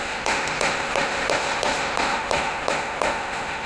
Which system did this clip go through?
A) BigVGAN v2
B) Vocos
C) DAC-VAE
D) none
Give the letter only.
C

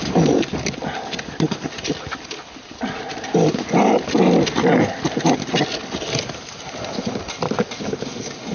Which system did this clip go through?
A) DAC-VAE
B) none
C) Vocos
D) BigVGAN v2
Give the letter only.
B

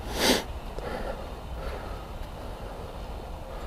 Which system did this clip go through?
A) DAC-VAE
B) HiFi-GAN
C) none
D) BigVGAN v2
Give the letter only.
C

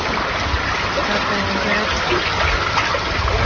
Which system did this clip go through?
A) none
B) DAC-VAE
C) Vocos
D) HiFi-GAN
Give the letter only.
A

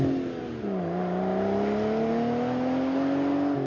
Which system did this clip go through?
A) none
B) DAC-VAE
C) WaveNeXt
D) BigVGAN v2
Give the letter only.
A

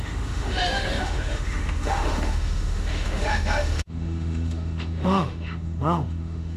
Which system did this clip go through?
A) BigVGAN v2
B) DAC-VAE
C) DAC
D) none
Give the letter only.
B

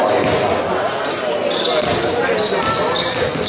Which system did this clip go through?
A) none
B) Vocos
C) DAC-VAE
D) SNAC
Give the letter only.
A